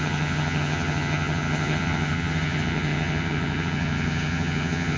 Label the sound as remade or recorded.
remade